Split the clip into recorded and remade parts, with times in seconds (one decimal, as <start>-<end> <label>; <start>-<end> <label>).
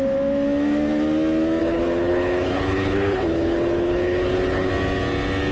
0.0-1.6 recorded; 1.6-4.7 remade; 4.7-5.5 recorded